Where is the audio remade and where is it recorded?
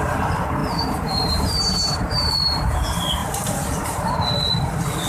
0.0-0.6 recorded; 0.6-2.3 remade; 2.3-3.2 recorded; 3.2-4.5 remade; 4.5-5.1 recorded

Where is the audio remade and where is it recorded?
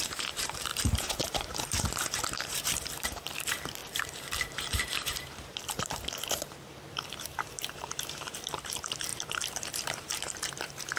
0.0-11.0 remade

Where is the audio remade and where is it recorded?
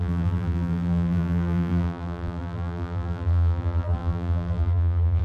0.0-5.2 remade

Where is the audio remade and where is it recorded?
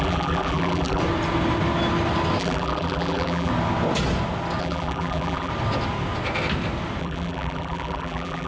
0.0-1.0 remade; 1.0-2.4 recorded; 2.4-3.5 remade; 3.5-4.6 recorded; 4.6-5.5 remade; 5.5-7.0 recorded; 7.0-8.5 remade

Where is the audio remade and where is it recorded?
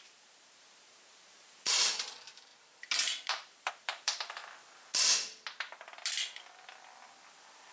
0.0-4.4 remade; 4.4-7.3 recorded; 7.3-7.7 remade